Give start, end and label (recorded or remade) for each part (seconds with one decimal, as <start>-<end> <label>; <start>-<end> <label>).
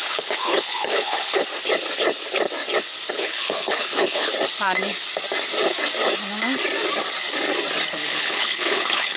0.0-1.4 remade; 1.4-3.1 recorded; 3.1-4.3 remade; 4.3-7.9 recorded; 7.9-9.2 remade